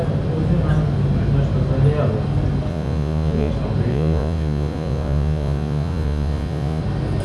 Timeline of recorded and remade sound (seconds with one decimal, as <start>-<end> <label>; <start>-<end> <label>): 0.0-2.7 recorded; 2.7-3.5 remade; 3.5-3.9 recorded; 3.9-6.8 remade; 6.8-7.2 recorded